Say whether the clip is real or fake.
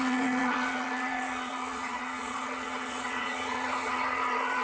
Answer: fake